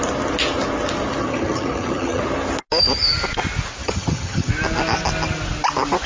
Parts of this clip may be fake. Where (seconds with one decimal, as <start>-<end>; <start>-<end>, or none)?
1.2-2.2; 3.8-4.5